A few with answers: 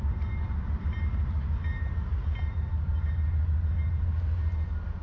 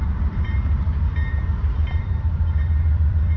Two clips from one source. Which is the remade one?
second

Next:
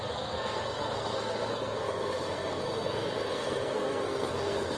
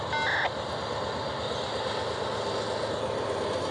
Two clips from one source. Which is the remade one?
first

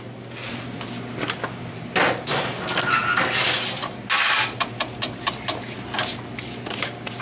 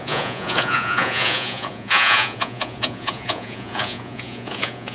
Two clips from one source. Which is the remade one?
second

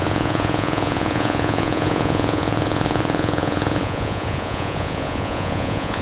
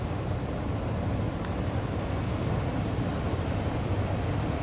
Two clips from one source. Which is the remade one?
first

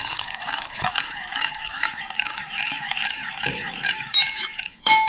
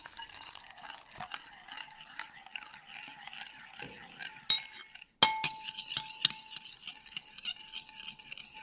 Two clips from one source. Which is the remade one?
first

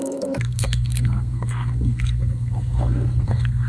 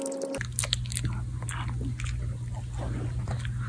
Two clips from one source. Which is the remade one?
first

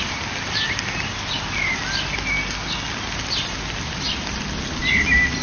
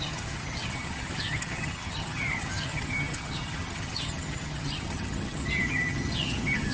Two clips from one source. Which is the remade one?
second